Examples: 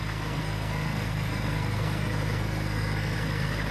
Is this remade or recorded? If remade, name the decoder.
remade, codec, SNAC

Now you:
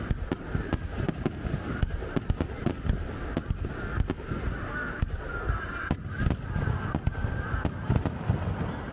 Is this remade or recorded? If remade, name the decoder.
recorded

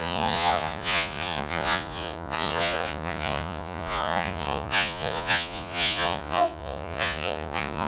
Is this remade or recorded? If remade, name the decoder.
remade, vocoder, Vocos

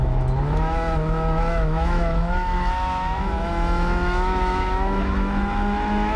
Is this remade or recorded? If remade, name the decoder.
remade, autoencoder, DAC-VAE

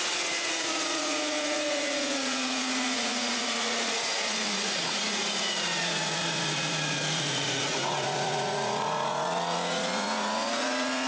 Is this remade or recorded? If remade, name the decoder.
remade, vocoder, Vocos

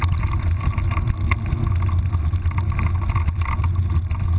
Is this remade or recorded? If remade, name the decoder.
recorded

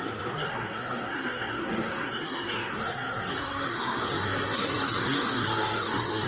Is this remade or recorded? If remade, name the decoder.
remade, codec, SNAC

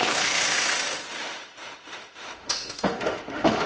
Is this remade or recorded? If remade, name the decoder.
remade, autoencoder, DAC-VAE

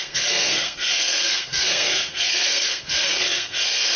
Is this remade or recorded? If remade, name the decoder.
remade, codec, SNAC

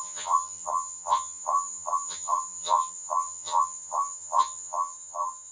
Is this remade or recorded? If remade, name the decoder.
remade, vocoder, HiFi-GAN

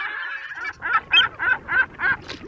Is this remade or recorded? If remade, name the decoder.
recorded